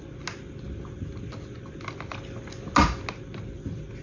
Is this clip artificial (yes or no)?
no